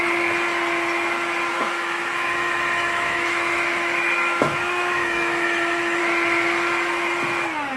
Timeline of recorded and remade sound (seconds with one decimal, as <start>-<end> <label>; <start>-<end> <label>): 0.0-1.5 recorded; 1.5-6.0 remade; 6.0-7.8 recorded